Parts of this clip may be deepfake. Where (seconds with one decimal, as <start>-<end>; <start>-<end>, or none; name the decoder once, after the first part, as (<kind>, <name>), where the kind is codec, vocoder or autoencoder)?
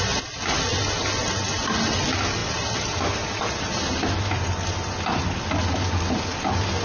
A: none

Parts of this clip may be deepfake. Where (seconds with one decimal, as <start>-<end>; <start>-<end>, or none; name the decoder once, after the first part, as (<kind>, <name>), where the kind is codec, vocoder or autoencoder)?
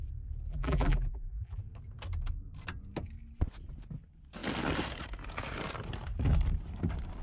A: 0.5-1.6 (vocoder, BigVGAN v2)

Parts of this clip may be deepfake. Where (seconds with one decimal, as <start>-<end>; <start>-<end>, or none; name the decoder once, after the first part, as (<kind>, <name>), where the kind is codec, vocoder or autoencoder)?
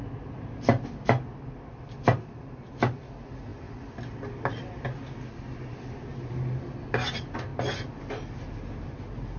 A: none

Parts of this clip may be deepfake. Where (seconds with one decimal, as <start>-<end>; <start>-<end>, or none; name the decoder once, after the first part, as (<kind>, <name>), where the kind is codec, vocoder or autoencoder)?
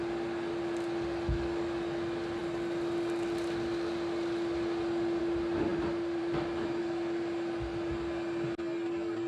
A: none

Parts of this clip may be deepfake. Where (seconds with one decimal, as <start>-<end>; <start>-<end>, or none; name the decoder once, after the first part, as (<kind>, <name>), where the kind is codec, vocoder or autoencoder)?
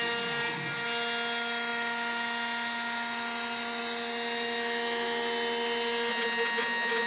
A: 6.1-7.1 (vocoder, Vocos)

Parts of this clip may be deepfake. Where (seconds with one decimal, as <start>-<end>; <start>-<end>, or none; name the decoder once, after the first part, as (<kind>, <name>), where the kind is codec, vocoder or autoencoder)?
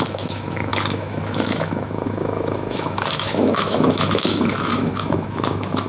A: 0.0-5.9 (autoencoder, DAC-VAE)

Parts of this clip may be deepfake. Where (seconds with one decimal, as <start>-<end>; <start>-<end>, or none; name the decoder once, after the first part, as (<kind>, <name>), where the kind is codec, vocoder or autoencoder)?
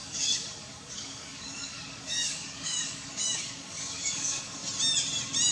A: 0.0-4.6 (codec, DAC)